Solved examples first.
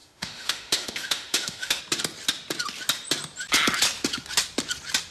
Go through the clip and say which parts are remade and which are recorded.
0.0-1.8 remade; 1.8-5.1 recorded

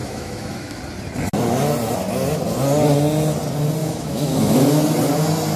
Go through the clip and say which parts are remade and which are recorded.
0.0-0.8 remade; 0.8-3.8 recorded; 3.8-4.6 remade; 4.6-5.6 recorded

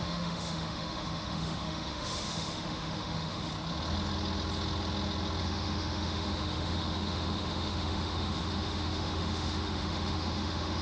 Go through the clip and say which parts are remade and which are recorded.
0.0-3.5 remade; 3.5-5.4 recorded; 5.4-10.8 remade

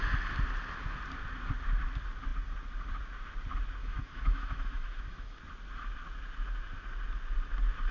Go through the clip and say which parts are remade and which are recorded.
0.0-3.8 recorded; 3.8-5.4 remade; 5.4-7.9 recorded

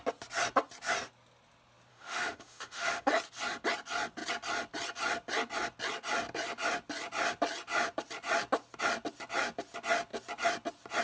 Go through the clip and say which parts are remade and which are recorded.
0.0-1.9 recorded; 1.9-3.1 remade; 3.1-11.0 recorded

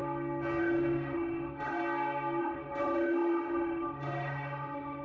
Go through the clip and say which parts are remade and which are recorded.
0.0-0.6 recorded; 0.6-1.8 remade; 1.8-2.4 recorded; 2.4-5.0 remade

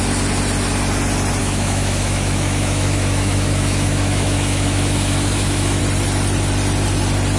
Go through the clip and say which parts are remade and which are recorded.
0.0-1.4 recorded; 1.4-5.8 remade; 5.8-7.4 recorded

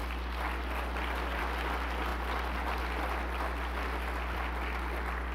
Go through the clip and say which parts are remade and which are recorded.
0.0-5.3 recorded